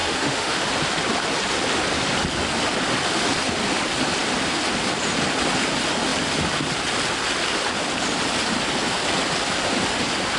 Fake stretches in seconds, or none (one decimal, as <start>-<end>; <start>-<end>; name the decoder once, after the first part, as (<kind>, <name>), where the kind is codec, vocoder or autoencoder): 0.0-0.7 (autoencoder, DAC-VAE)